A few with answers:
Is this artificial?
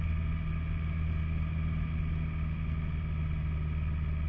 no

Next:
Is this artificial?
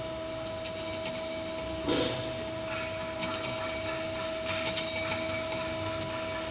no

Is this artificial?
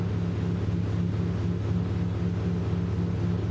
no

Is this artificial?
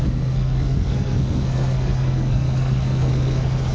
yes